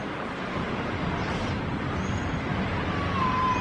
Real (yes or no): yes